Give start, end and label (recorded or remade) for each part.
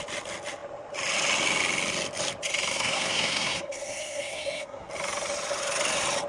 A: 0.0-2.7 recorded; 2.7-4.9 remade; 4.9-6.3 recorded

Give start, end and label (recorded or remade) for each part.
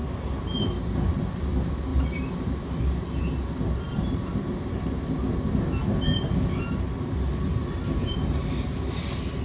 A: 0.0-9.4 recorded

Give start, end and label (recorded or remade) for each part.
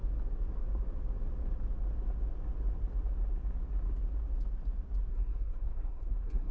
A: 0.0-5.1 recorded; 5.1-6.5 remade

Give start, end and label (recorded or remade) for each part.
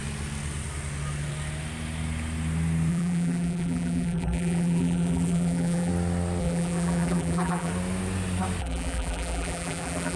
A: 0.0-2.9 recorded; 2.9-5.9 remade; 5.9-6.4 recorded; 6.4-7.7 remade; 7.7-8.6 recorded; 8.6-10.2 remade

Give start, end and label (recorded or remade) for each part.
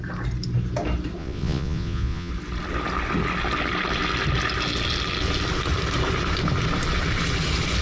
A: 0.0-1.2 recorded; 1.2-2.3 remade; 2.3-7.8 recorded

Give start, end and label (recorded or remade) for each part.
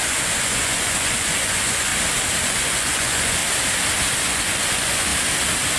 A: 0.0-1.9 remade; 1.9-2.4 recorded; 2.4-3.4 remade; 3.4-4.2 recorded; 4.2-5.1 remade; 5.1-5.8 recorded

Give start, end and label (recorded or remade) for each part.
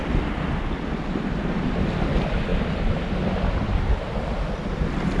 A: 0.0-5.2 remade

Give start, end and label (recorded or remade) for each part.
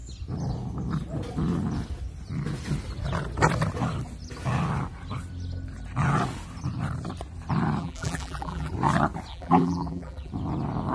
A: 0.0-7.8 recorded; 7.8-8.7 remade; 8.7-9.3 recorded; 9.3-10.3 remade; 10.3-10.9 recorded